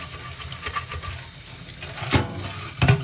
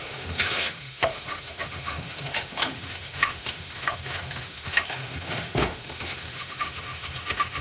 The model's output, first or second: second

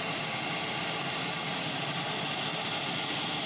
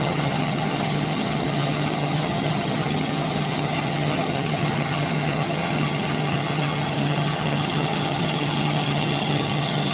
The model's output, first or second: second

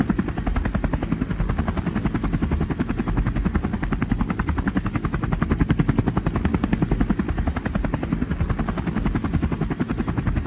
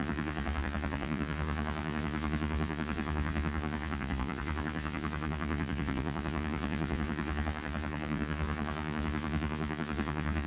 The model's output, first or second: second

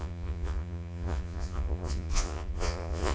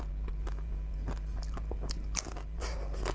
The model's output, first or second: first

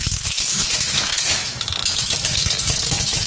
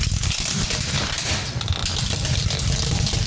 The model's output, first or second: first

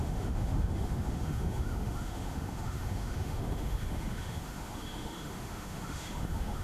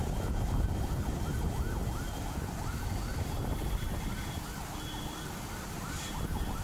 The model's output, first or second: first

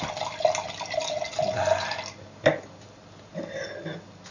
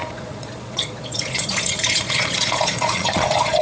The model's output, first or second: second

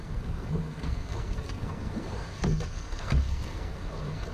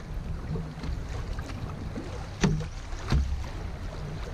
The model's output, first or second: first